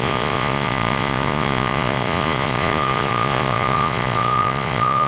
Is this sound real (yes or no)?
no